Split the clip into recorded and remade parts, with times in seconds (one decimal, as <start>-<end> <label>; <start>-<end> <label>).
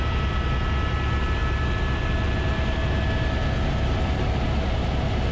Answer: 0.0-5.3 recorded